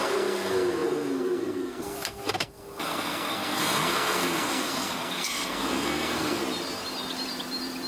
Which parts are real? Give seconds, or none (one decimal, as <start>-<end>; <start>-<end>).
6.4-7.9